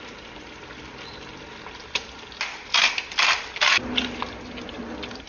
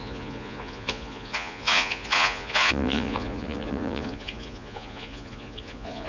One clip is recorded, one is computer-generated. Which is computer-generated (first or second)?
second